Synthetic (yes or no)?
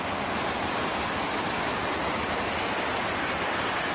no